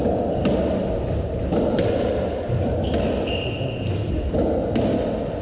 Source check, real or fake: real